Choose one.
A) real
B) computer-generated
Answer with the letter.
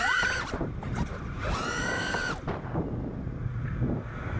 A